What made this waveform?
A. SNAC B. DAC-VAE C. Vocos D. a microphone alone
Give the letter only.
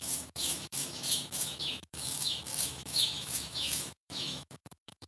B